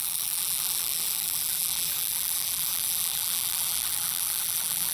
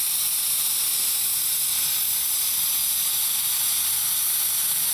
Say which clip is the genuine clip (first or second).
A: second